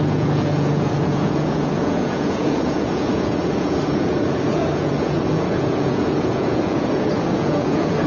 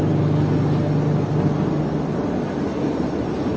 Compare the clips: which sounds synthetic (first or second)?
first